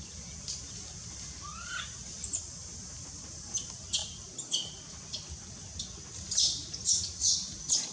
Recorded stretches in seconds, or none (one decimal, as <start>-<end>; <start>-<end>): 0.0-7.9